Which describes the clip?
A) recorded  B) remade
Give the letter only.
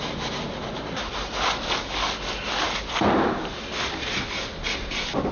A